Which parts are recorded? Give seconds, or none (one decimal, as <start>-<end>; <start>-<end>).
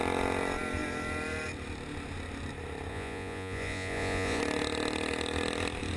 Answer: 0.0-2.9; 4.4-6.0